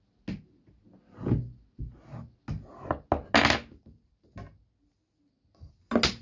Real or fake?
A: real